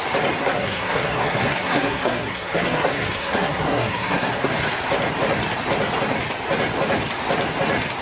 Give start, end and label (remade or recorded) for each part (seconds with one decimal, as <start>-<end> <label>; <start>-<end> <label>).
0.0-0.4 recorded; 0.4-4.5 remade; 4.5-8.0 recorded